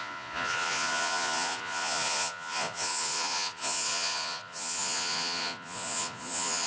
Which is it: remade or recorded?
remade